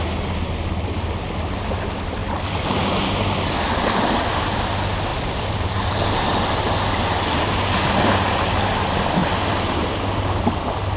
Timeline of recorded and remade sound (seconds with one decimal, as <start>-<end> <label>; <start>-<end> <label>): 0.0-5.1 recorded; 5.1-6.4 remade; 6.4-11.0 recorded